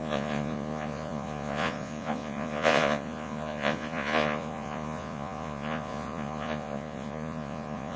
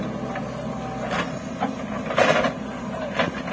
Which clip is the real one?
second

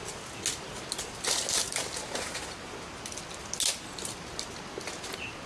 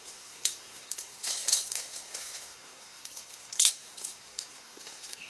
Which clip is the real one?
first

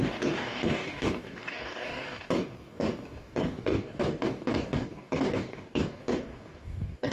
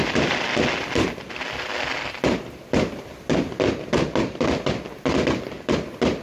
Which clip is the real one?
second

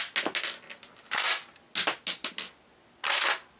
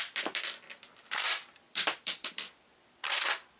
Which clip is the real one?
first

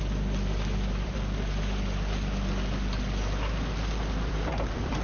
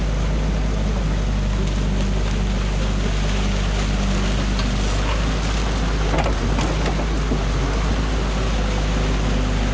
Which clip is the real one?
second